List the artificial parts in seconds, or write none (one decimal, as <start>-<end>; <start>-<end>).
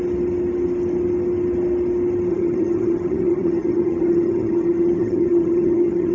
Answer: 2.3-6.1